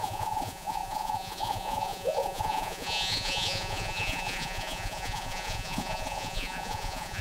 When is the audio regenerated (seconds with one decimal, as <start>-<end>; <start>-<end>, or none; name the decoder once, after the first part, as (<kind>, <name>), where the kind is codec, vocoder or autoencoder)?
0.0-7.2 (vocoder, Vocos)